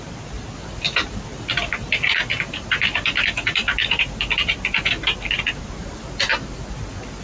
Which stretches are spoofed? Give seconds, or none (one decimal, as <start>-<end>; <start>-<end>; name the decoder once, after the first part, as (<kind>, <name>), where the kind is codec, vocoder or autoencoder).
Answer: 0.0-6.3 (vocoder, BigVGAN v2)